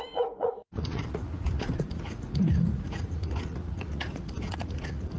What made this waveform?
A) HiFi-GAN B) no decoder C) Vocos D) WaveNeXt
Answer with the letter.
C